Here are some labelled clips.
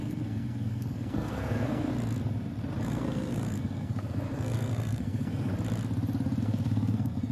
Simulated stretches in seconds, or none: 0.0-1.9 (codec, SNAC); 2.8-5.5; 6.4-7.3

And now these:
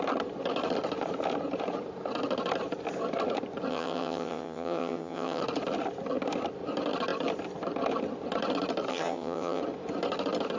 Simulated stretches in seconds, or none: 3.7-5.4 (vocoder, HiFi-GAN); 8.9-9.6

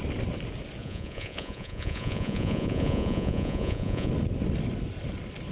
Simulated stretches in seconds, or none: 0.8-4.1 (vocoder, Vocos)

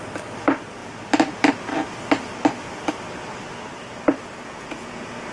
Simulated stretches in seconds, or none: 4.4-5.3 (vocoder, Vocos)

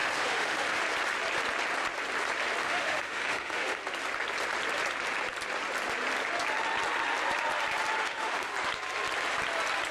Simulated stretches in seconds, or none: 0.0-0.8 (autoencoder, DAC-VAE); 2.6-3.8; 8.0-8.5

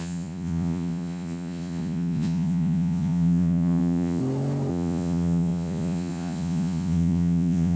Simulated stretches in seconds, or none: 0.0-4.2 (vocoder, Vocos); 4.7-7.8